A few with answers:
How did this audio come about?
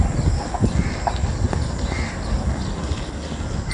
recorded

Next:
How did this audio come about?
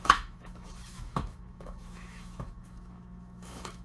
remade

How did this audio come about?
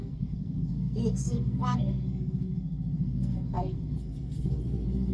remade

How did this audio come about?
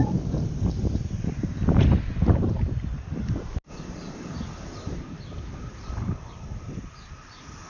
recorded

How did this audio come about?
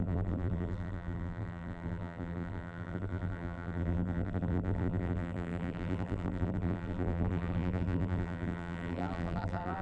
remade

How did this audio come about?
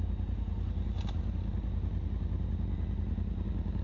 recorded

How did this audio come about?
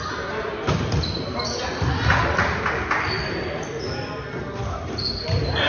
recorded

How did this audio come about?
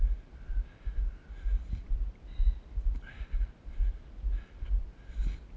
recorded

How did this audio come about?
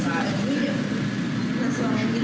recorded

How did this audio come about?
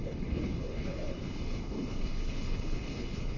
remade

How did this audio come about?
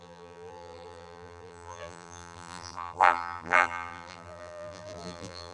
remade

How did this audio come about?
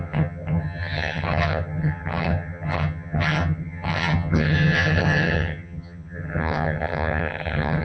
remade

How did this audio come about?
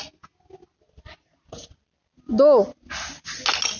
recorded